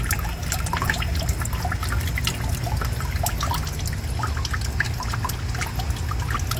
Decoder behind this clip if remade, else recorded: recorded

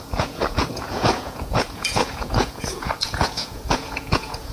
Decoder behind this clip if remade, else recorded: remade, vocoder, Vocos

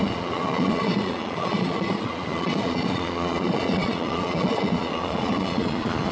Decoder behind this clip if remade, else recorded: remade, vocoder, Vocos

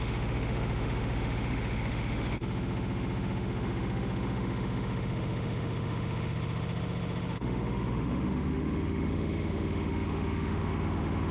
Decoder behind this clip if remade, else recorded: remade, autoencoder, DAC-VAE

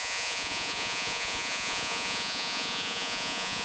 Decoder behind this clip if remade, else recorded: remade, vocoder, Vocos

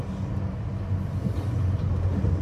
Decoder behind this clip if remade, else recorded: recorded